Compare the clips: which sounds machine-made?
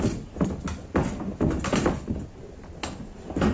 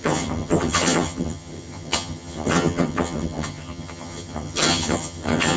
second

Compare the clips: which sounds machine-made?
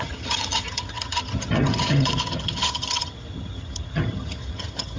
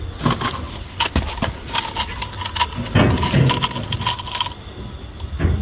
first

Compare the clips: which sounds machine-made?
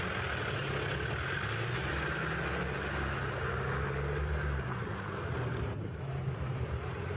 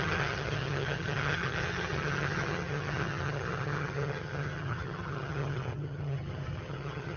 second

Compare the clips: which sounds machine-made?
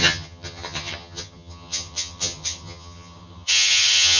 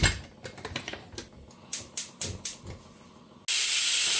first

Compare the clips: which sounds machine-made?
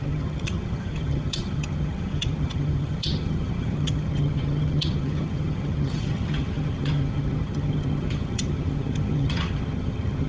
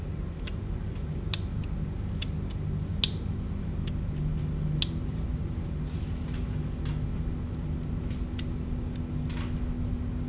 first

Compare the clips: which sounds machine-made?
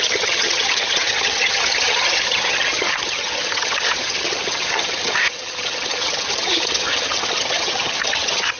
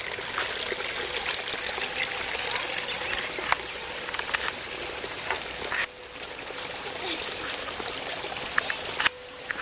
first